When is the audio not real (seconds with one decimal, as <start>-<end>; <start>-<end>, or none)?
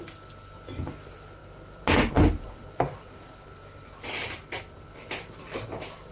none